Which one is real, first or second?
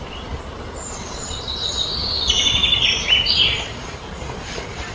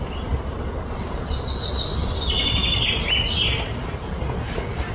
second